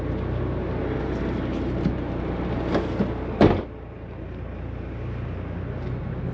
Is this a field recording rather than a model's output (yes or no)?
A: yes